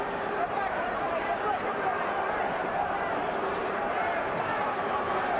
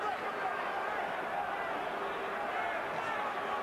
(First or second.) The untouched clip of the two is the second